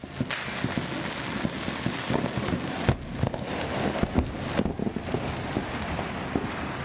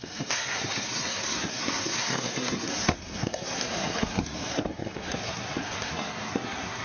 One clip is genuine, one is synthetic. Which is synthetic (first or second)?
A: second